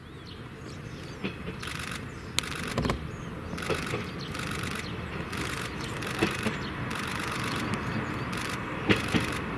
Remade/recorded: recorded